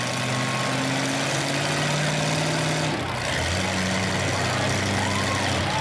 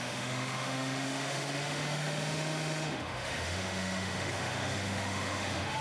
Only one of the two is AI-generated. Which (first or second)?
second